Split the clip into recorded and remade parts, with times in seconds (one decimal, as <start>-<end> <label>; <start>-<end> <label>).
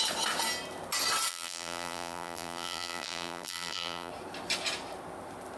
0.0-1.3 recorded; 1.3-4.1 remade; 4.1-5.6 recorded